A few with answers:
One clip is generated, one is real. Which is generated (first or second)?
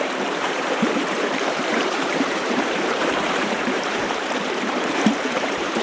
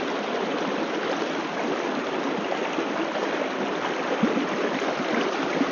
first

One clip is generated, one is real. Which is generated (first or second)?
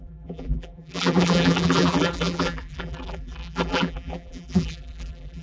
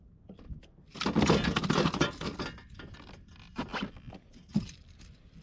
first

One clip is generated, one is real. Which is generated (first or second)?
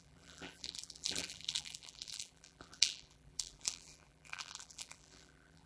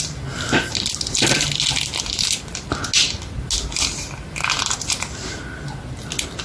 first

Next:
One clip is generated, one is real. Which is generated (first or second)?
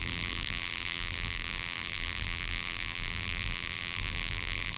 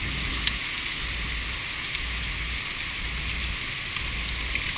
first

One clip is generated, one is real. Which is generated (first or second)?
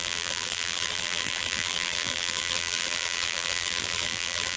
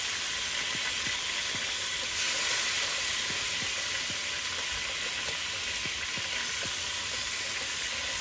first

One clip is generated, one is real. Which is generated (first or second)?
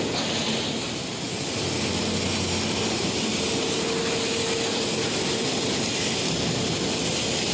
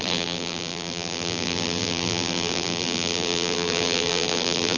second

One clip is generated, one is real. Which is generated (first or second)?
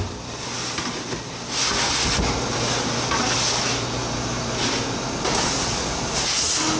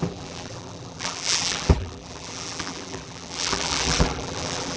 second